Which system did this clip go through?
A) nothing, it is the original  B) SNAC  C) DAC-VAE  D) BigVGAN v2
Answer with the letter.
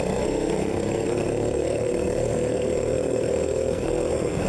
B